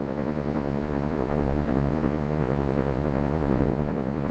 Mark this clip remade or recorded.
remade